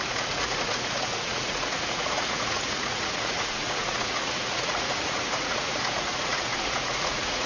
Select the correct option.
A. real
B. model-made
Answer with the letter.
B